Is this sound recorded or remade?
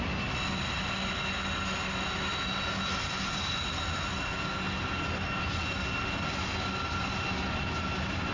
recorded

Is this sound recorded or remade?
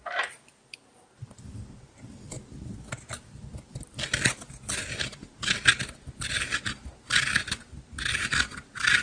recorded